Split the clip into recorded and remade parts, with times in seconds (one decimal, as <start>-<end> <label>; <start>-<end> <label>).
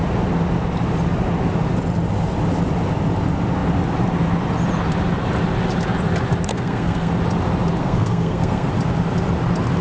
0.0-6.5 recorded; 6.5-7.1 remade; 7.1-7.8 recorded; 7.8-8.7 remade; 8.7-9.8 recorded